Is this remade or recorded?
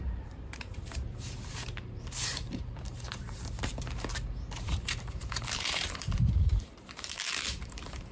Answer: remade